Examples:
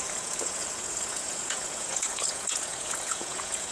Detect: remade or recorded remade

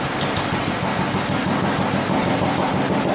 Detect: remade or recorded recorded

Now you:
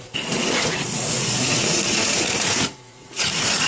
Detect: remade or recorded remade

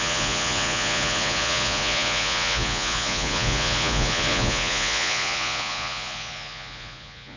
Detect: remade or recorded remade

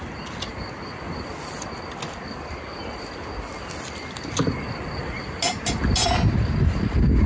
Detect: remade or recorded recorded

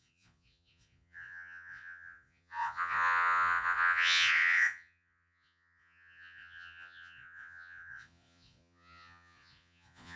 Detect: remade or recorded remade